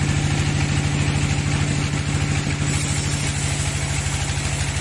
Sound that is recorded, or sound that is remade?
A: recorded